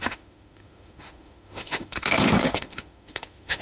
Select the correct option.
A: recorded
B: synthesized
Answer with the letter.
B